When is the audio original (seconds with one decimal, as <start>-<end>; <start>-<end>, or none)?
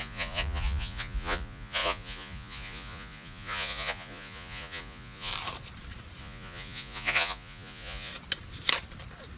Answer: 5.3-6.2; 8.1-9.4